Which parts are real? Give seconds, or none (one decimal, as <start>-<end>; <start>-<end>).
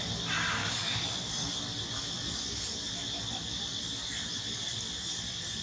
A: 0.0-0.6; 1.5-5.6